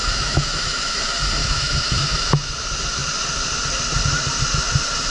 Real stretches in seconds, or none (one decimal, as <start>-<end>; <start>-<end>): 1.0-1.4; 2.5-5.1